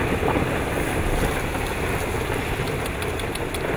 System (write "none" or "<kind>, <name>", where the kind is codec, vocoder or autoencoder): none